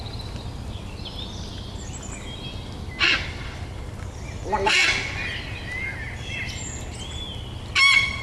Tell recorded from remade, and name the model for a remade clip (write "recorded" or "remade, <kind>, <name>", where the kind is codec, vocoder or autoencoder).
recorded